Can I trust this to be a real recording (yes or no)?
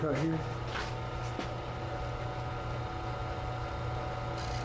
yes